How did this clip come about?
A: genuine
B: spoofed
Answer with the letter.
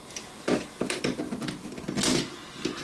A